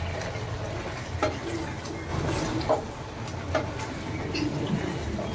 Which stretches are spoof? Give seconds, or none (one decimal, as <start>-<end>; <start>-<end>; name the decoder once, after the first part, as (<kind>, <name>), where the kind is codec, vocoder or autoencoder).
none